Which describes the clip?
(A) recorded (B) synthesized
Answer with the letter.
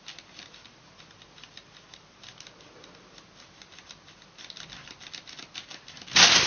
A